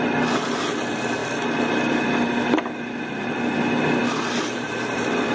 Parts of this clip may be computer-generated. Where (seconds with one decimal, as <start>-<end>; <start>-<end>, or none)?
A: 0.0-1.2; 4.4-5.3